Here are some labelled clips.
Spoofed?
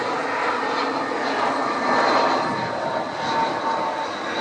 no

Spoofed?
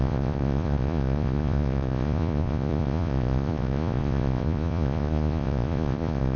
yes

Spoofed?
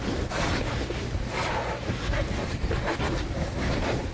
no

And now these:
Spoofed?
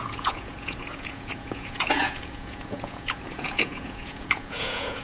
yes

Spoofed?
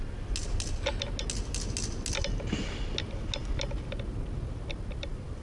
no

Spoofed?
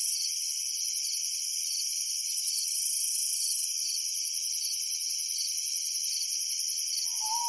no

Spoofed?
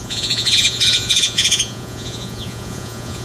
yes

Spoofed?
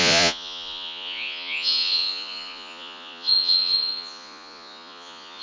yes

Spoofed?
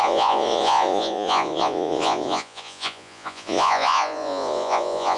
yes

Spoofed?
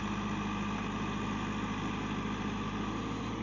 no